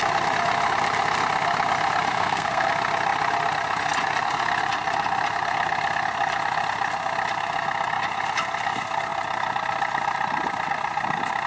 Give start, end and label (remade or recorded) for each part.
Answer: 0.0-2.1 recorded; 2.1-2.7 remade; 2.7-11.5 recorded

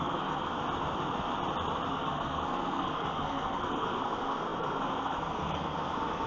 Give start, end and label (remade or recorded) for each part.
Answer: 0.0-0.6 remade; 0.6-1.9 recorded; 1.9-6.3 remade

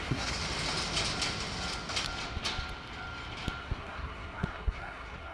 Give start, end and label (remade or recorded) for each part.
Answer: 0.0-0.4 remade; 0.4-3.6 recorded; 3.6-5.3 remade